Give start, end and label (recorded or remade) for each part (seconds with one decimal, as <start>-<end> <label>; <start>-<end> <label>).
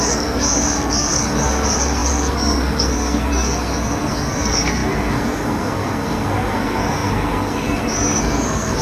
0.0-8.8 remade